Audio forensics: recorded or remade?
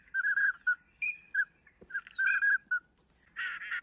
recorded